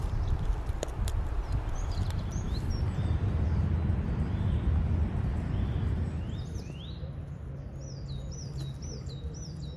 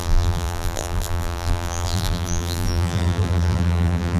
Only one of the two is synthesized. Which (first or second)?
second